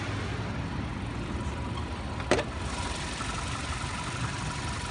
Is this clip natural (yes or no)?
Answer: yes